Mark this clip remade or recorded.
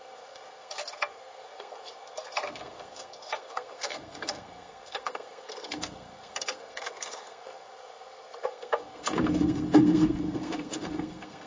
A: remade